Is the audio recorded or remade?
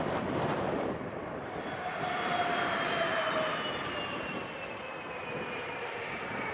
remade